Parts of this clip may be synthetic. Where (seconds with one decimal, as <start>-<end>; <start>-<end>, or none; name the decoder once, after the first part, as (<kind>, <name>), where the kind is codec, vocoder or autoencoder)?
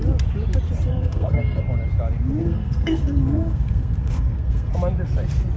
0.9-1.6 (codec, SNAC); 2.4-4.7